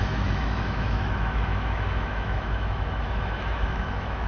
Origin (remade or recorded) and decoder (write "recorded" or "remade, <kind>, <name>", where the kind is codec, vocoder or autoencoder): remade, autoencoder, DAC-VAE